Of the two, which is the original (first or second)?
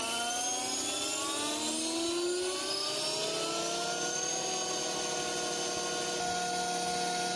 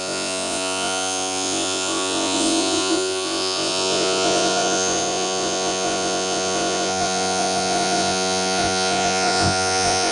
first